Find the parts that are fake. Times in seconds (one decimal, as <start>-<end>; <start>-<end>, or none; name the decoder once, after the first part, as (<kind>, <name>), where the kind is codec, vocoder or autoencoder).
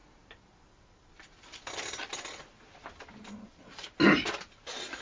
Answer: none